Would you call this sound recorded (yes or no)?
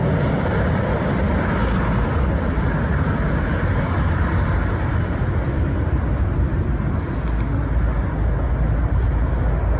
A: yes